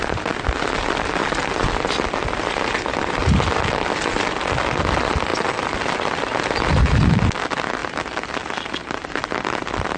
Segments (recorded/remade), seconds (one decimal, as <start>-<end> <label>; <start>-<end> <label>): 0.0-7.8 recorded; 7.8-8.5 remade; 8.5-10.0 recorded